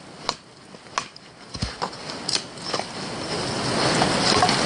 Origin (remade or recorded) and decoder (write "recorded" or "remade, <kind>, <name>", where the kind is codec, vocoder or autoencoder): recorded